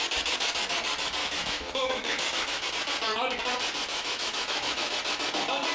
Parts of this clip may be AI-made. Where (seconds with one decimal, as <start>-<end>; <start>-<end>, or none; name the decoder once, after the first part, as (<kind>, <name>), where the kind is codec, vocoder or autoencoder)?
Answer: 1.2-2.7 (autoencoder, DAC-VAE); 3.9-4.9